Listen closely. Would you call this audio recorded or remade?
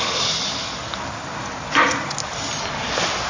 recorded